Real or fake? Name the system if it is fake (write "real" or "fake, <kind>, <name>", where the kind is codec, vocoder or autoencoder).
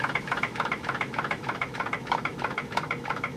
fake, autoencoder, DAC-VAE